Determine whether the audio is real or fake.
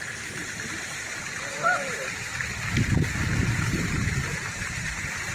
fake